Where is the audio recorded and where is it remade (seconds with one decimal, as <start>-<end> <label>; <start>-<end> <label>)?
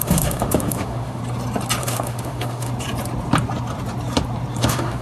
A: 0.0-1.2 remade; 1.2-1.8 recorded; 1.8-2.7 remade; 2.7-4.6 recorded; 4.6-5.0 remade